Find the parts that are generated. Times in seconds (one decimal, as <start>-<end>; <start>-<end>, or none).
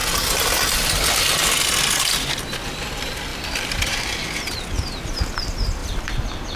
3.3-4.2; 5.8-6.6